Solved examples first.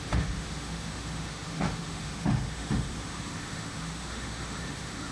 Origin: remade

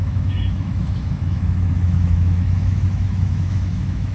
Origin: remade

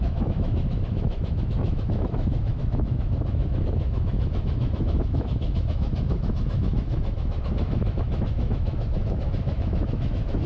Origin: remade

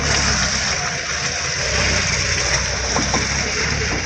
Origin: recorded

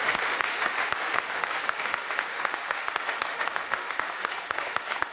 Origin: remade